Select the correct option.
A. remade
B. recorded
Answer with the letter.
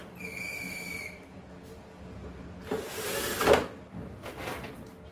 B